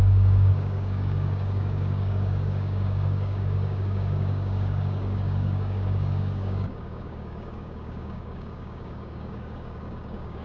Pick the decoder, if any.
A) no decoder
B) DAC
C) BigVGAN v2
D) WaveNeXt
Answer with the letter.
B